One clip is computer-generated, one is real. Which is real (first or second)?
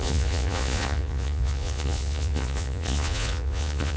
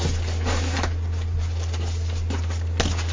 second